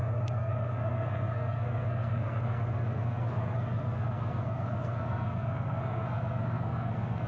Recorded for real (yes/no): no